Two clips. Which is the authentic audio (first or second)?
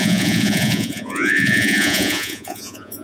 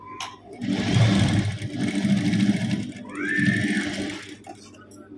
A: second